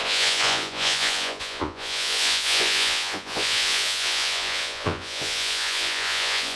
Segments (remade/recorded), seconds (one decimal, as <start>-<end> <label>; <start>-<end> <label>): 0.0-6.6 remade

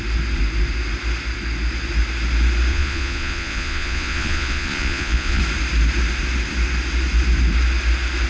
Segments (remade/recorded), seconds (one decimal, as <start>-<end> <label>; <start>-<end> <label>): 0.0-2.7 recorded; 2.7-5.4 remade; 5.4-8.3 recorded

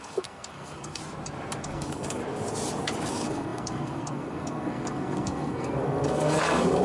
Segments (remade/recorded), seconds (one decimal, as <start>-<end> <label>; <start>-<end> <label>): 0.0-1.0 remade; 1.0-1.6 recorded; 1.6-2.2 remade; 2.2-3.1 recorded; 3.1-6.8 remade

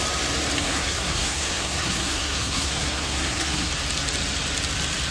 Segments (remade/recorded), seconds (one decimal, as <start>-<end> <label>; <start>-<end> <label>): 0.0-0.6 recorded; 0.6-3.7 remade; 3.7-5.1 recorded

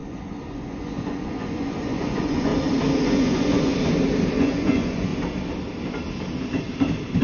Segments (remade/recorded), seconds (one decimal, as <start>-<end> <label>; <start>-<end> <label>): 0.0-2.5 remade; 2.5-3.0 recorded; 3.0-3.7 remade; 3.7-4.3 recorded; 4.3-5.1 remade; 5.1-7.2 recorded

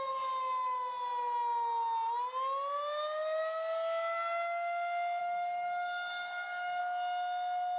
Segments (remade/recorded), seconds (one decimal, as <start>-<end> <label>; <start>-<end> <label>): 0.0-5.2 recorded; 5.2-6.8 remade; 6.8-7.8 recorded

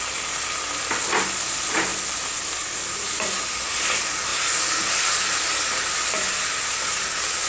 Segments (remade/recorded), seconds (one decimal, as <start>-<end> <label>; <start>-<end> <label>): 0.0-7.5 recorded